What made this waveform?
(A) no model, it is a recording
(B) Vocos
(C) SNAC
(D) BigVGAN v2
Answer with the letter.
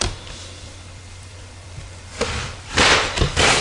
D